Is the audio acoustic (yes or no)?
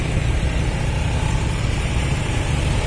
no